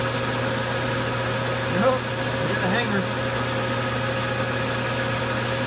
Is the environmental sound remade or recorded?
recorded